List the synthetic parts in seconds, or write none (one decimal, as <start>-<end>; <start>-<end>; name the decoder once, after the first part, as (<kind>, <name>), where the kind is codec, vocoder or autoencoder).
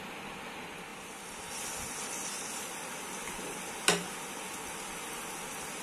none